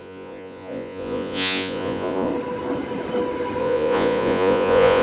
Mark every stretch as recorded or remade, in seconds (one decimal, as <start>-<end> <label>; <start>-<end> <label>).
0.0-2.3 remade; 2.3-3.6 recorded; 3.6-5.0 remade